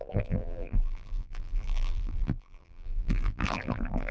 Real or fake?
fake